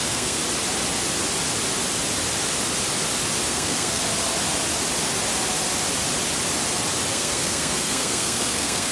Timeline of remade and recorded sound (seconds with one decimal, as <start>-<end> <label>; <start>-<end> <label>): 0.0-0.4 remade; 0.4-3.5 recorded; 3.5-4.0 remade; 4.0-7.1 recorded; 7.1-8.9 remade